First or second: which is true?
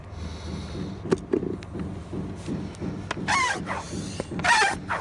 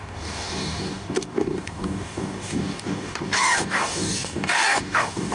first